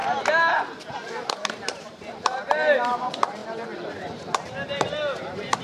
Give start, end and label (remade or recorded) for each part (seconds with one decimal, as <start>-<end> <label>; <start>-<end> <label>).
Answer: 0.0-0.9 recorded; 0.9-5.6 remade